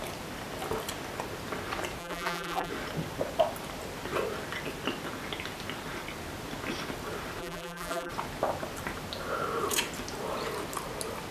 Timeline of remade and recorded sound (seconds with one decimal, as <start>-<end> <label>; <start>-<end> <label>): 0.0-2.0 recorded; 2.0-2.7 remade; 2.7-7.4 recorded; 7.4-8.1 remade; 8.1-11.3 recorded